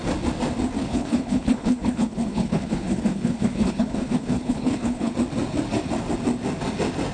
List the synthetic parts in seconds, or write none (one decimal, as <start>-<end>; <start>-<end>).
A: 0.8-5.1